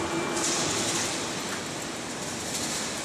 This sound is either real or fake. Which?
real